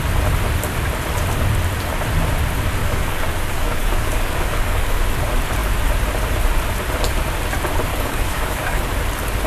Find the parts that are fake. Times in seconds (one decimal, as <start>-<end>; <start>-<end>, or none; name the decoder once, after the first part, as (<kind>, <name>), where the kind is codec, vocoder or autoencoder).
2.8-5.0 (codec, DAC); 7.9-8.8